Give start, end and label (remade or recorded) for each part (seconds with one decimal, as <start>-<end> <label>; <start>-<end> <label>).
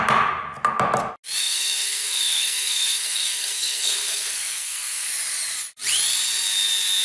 0.0-1.4 recorded; 1.4-5.1 remade; 5.1-7.0 recorded